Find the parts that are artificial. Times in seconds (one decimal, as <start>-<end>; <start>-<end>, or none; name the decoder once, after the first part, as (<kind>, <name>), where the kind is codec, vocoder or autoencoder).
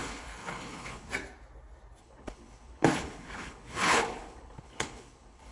0.0-1.1 (codec, HILCodec); 2.0-5.5